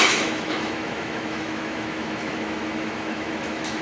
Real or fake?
fake